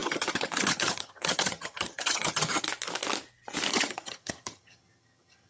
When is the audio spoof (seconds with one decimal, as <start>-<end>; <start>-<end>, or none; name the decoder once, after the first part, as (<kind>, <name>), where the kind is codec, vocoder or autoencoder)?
0.0-2.6 (vocoder, HiFi-GAN); 3.7-5.5